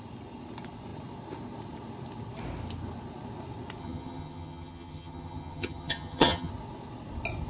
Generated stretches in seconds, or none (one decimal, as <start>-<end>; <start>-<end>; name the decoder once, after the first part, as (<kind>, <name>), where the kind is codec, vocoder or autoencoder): 3.8-6.5 (vocoder, HiFi-GAN)